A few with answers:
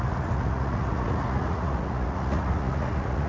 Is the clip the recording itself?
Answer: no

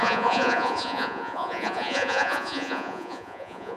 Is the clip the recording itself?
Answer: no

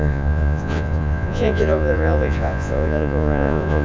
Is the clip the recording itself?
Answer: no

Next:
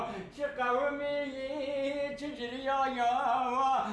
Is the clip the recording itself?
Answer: yes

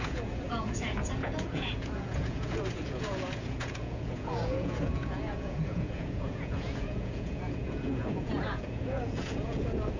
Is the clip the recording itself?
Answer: no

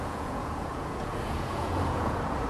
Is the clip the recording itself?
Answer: no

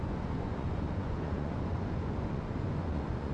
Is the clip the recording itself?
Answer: no